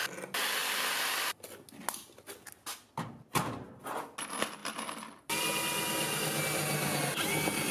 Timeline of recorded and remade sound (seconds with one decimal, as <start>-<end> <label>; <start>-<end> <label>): 0.0-7.7 recorded